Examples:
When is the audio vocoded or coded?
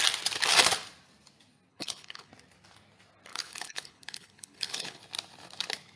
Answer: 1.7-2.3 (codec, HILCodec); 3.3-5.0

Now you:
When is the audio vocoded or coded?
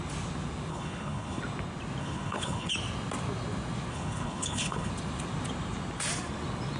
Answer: 0.7-1.4 (codec, HILCodec); 2.0-2.7; 3.9-4.9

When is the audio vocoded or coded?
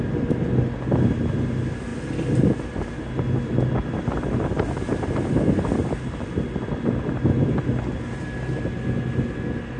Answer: none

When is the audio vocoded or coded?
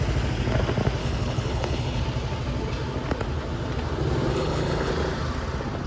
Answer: 1.0-2.0 (codec, HILCodec); 4.3-4.9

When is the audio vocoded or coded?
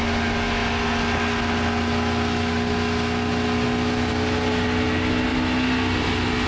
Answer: none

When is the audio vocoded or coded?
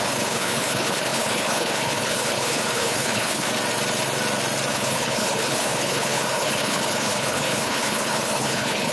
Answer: 0.0-3.5 (codec, HILCodec); 4.7-8.9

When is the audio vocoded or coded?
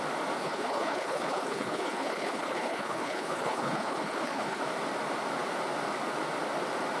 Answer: 0.4-4.6 (codec, HILCodec)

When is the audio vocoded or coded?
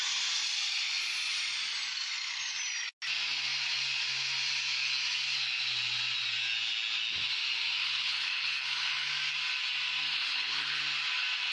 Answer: 7.8-9.1 (codec, HILCodec); 10.1-10.8